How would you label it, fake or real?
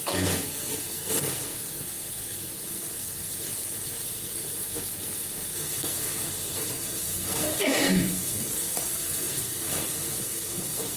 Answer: fake